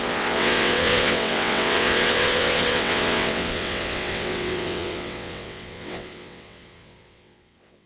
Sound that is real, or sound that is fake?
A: fake